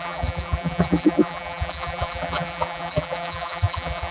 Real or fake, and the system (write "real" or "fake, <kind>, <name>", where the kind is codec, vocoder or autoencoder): fake, vocoder, BigVGAN v2